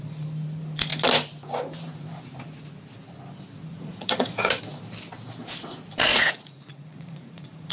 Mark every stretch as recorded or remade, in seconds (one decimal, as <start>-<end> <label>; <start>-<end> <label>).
0.0-3.6 recorded; 3.6-4.6 remade; 4.6-6.1 recorded; 6.1-7.7 remade

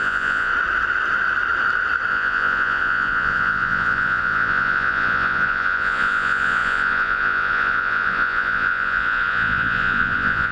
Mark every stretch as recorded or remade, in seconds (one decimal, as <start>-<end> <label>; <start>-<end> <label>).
0.0-0.5 remade; 0.5-2.1 recorded; 2.1-10.5 remade

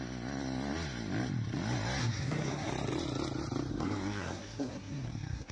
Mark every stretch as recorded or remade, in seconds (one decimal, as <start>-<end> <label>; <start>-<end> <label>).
0.0-2.0 recorded; 2.0-2.7 remade; 2.7-3.7 recorded; 3.7-5.5 remade

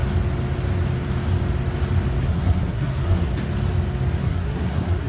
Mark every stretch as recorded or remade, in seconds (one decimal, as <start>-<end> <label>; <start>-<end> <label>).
0.0-2.2 recorded; 2.2-3.3 remade; 3.3-4.2 recorded; 4.2-5.1 remade